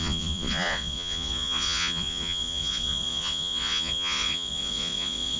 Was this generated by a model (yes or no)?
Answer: yes